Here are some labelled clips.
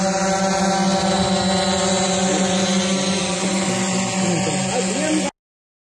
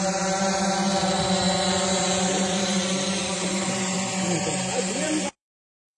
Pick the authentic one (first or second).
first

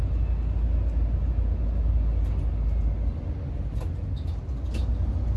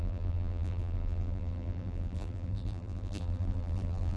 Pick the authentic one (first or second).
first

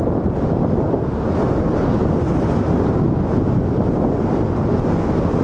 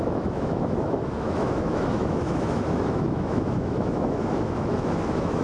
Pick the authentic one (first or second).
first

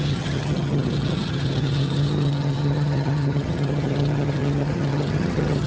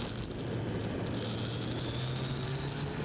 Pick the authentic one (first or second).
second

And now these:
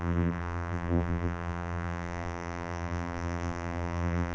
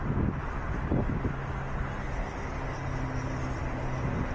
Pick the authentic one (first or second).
second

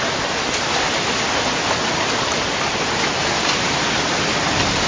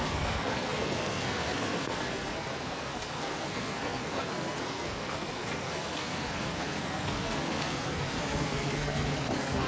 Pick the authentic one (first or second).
first